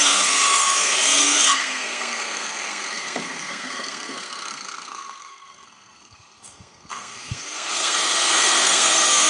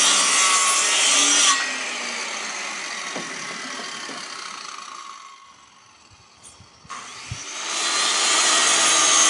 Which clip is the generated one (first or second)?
first